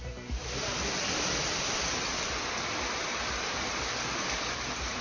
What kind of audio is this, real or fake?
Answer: real